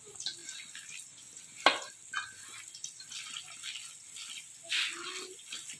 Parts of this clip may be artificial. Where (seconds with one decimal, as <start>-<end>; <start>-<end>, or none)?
none